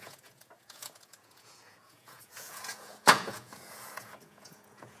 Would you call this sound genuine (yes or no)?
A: no